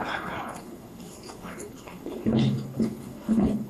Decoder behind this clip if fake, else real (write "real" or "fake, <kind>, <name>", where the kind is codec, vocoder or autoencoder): fake, codec, HILCodec